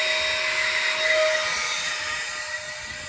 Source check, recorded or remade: recorded